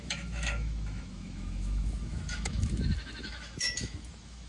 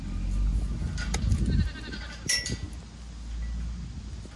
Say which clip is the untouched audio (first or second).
second